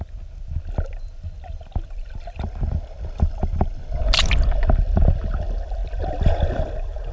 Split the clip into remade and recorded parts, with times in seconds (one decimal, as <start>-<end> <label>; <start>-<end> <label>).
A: 0.0-7.1 recorded